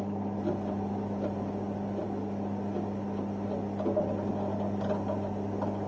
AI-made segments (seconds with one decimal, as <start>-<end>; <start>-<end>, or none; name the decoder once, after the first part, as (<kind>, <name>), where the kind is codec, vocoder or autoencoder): none